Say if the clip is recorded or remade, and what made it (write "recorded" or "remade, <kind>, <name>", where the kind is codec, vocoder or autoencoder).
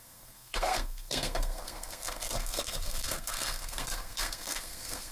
remade, codec, SNAC